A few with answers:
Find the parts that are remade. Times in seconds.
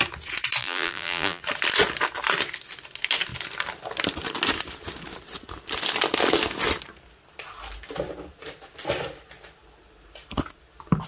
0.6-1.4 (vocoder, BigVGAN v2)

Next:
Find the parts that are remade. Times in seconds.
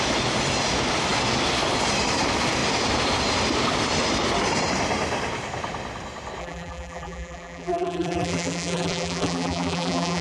6.4-10.2 (vocoder, BigVGAN v2)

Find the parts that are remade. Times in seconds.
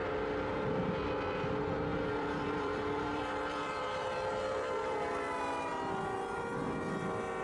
1.9-5.0 (vocoder, BigVGAN v2)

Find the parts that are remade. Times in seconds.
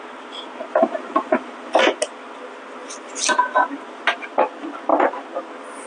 0.7-1.8 (vocoder, BigVGAN v2)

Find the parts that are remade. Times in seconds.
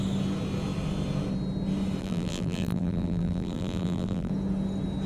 2.0-4.3 (vocoder, BigVGAN v2)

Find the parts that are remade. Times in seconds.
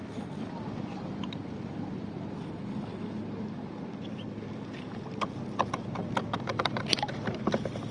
0.0-3.0 (vocoder, BigVGAN v2)